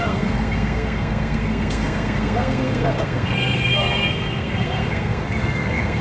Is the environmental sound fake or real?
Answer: fake